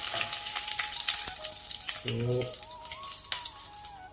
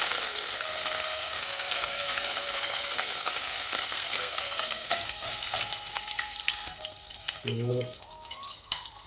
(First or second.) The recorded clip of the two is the first